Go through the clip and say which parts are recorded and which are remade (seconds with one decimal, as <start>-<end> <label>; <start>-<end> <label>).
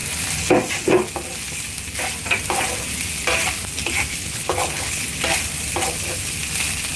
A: 0.0-4.1 recorded; 4.1-5.0 remade; 5.0-5.9 recorded; 5.9-6.4 remade; 6.4-7.0 recorded